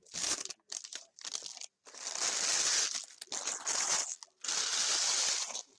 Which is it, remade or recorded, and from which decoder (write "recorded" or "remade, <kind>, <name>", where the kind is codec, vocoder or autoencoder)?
recorded